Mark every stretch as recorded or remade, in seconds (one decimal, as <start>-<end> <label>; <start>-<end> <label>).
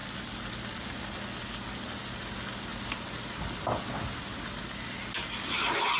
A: 0.0-6.0 recorded